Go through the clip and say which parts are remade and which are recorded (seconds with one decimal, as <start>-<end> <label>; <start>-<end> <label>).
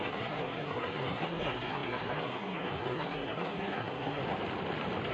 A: 0.0-4.2 remade; 4.2-5.1 recorded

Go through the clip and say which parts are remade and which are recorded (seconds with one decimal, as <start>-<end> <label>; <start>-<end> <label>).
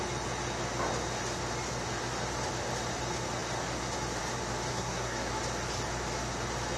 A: 0.0-4.7 recorded; 4.7-5.3 remade; 5.3-6.8 recorded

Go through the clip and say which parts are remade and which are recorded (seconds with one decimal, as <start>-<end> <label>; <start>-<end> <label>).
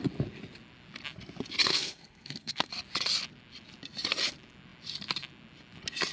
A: 0.0-1.7 recorded; 1.7-2.7 remade; 2.7-6.1 recorded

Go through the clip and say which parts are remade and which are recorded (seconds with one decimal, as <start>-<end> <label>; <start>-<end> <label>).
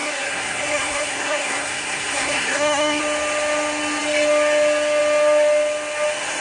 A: 0.0-3.0 remade; 3.0-6.4 recorded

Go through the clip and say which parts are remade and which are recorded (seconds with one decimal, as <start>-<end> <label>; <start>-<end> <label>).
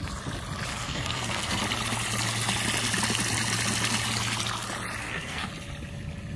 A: 0.0-0.7 recorded; 0.7-1.6 remade; 1.6-5.0 recorded; 5.0-5.5 remade; 5.5-6.4 recorded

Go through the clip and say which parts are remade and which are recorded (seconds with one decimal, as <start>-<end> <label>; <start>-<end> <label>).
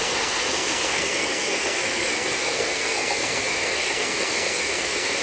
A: 0.0-5.2 remade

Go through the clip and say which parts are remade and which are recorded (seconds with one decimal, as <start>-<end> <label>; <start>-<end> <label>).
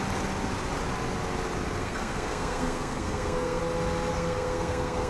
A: 0.0-1.8 recorded; 1.8-3.6 remade; 3.6-4.1 recorded; 4.1-5.1 remade